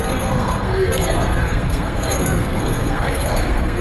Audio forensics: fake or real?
fake